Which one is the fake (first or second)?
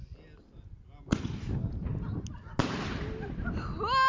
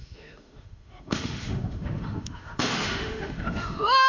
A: second